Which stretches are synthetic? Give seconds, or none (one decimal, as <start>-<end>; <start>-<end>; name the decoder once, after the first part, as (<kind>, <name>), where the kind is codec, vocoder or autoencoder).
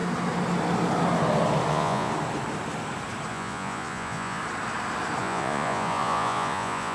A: 1.7-2.1 (vocoder, Vocos); 3.3-4.4; 5.2-6.9